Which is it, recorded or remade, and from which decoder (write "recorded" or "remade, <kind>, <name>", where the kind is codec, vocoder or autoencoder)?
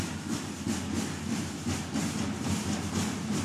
recorded